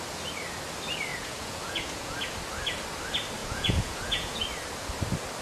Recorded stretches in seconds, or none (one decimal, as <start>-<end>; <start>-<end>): 0.0-1.1; 2.2-3.4; 4.4-5.4

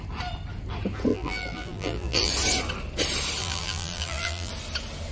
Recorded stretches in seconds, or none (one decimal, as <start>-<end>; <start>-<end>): 0.0-1.1; 2.3-3.4; 4.5-5.1

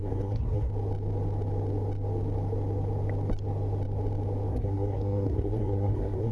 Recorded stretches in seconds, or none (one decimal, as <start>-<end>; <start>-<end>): 0.7-4.5